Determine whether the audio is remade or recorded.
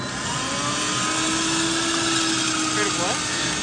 recorded